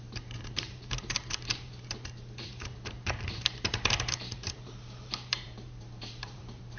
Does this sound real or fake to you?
fake